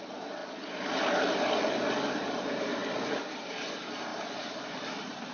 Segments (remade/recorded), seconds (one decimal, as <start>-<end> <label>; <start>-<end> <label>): 0.0-0.4 remade; 0.4-1.9 recorded; 1.9-2.8 remade; 2.8-3.3 recorded; 3.3-5.3 remade